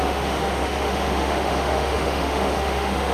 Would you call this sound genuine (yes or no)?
no